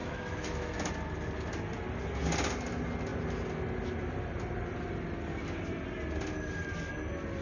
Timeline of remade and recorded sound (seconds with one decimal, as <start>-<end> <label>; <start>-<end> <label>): 0.0-0.9 remade; 0.9-7.4 recorded